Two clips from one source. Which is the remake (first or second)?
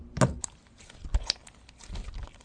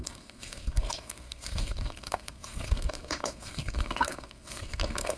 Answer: second